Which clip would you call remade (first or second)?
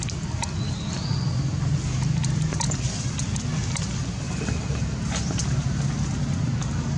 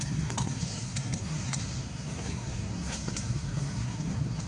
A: second